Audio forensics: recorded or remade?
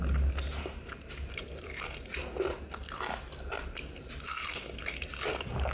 recorded